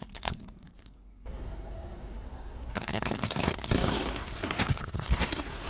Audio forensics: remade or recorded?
remade